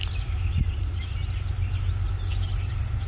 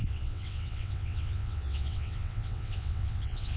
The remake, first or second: second